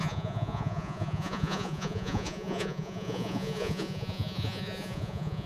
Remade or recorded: remade